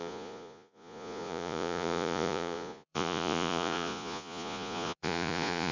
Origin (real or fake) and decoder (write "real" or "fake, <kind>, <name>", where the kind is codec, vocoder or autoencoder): fake, vocoder, Vocos